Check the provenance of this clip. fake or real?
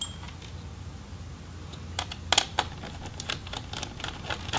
real